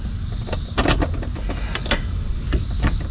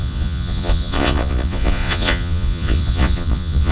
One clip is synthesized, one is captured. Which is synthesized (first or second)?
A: second